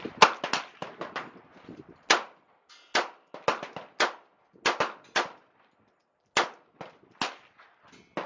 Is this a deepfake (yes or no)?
no